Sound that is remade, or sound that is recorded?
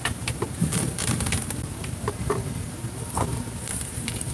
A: remade